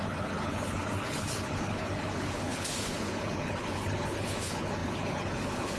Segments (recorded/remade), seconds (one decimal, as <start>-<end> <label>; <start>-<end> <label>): 0.0-5.8 remade